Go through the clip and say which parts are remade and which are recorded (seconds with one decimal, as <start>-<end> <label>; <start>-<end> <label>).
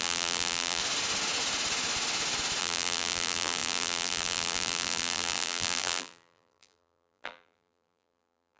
0.0-0.8 remade; 0.8-2.6 recorded; 2.6-8.6 remade